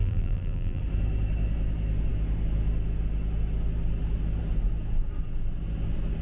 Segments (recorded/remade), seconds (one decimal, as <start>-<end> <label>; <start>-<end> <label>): 0.0-0.8 remade; 0.8-6.2 recorded